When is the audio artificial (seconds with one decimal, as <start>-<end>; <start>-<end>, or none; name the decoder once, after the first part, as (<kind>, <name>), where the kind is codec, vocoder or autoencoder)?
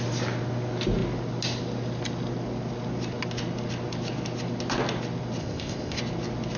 5.4-6.0 (codec, ZipCodec)